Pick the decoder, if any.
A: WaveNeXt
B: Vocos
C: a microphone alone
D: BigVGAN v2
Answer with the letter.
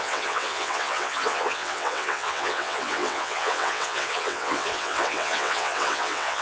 A